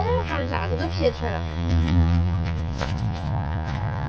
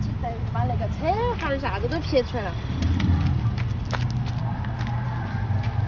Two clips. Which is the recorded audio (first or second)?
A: second